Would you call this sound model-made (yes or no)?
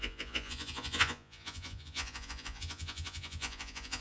yes